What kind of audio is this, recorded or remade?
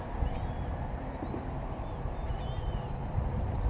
recorded